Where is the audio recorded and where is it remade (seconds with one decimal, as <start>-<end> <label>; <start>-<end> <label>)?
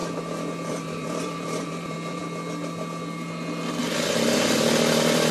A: 0.0-0.7 recorded; 0.7-2.2 remade; 2.2-3.8 recorded; 3.8-5.3 remade